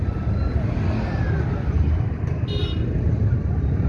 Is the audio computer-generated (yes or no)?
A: no